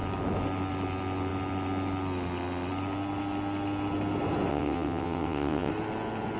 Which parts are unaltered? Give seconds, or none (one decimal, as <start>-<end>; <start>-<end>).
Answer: 0.0-4.5; 5.7-6.4